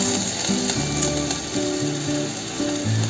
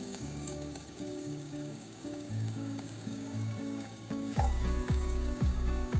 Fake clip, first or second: second